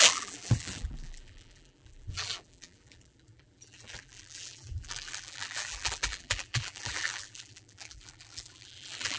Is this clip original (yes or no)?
no